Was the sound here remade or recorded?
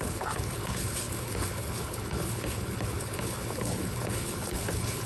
remade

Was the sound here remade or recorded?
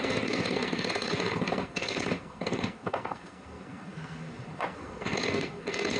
remade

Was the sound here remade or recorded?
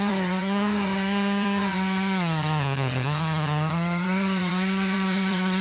remade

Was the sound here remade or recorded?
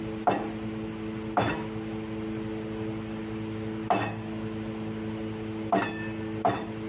recorded